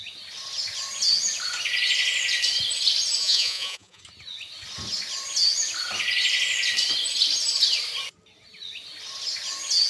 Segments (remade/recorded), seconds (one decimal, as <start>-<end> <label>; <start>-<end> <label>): 0.0-3.2 recorded; 3.2-4.0 remade; 4.0-9.9 recorded